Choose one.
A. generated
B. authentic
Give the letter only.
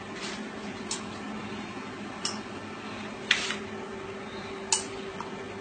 B